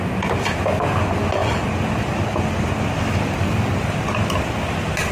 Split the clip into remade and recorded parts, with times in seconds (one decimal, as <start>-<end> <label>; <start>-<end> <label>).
0.0-5.1 recorded